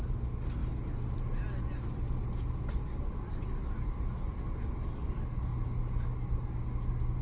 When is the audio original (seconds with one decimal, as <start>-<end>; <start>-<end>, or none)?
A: 0.0-7.2